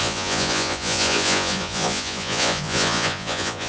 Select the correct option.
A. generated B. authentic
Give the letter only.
A